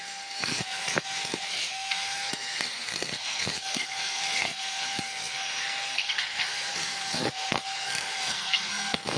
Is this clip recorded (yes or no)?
no